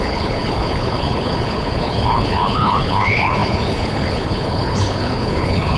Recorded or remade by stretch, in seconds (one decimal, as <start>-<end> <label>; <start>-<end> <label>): 0.0-5.8 remade